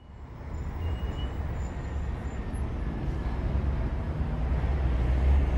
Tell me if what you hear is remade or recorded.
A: recorded